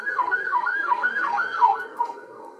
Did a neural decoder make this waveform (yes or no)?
yes